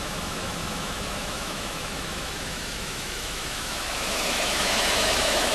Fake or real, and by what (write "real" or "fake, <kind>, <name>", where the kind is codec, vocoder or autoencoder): fake, autoencoder, DAC-VAE